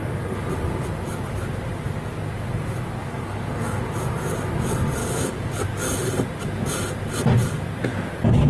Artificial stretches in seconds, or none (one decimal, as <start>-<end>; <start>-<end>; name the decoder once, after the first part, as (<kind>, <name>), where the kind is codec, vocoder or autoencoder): 3.0-3.8 (codec, DAC); 5.0-5.6